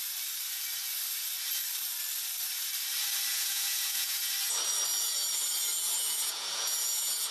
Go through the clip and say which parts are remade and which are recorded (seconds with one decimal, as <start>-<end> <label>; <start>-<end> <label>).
0.0-3.3 recorded; 3.3-4.3 remade; 4.3-6.0 recorded; 6.0-7.3 remade